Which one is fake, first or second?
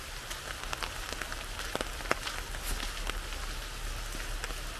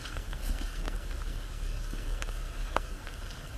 second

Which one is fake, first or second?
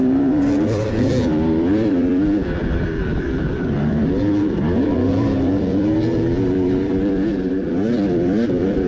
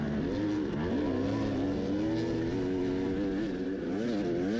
first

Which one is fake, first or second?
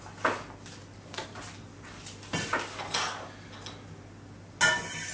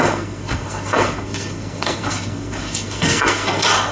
second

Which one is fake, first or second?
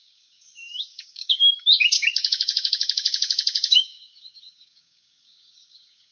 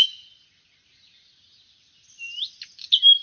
first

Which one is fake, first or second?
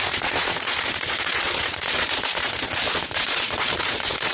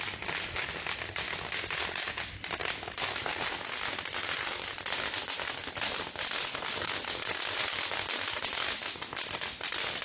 first